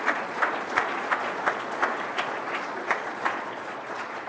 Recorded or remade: remade